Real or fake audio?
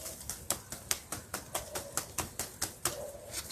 real